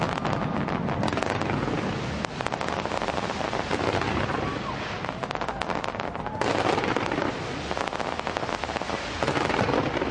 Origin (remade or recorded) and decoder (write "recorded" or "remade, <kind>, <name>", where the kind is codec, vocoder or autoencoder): recorded